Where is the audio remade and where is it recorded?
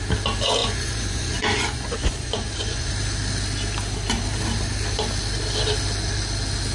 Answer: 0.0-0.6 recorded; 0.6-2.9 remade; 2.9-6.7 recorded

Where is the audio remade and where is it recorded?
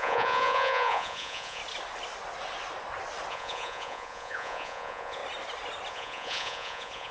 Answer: 0.0-1.6 remade; 1.6-3.3 recorded; 3.3-5.2 remade; 5.2-5.9 recorded; 5.9-7.1 remade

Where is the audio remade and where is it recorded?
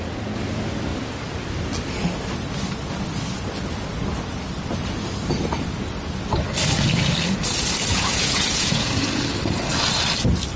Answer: 0.0-7.9 recorded; 7.9-9.2 remade; 9.2-10.6 recorded